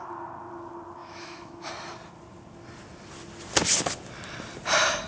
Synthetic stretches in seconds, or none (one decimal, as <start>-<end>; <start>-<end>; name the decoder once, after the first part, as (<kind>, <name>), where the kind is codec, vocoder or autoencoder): 1.0-1.7 (autoencoder, DAC-VAE)